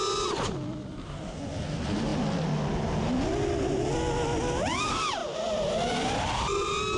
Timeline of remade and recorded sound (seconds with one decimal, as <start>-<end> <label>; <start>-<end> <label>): 0.0-5.2 recorded; 5.2-5.7 remade; 5.7-7.0 recorded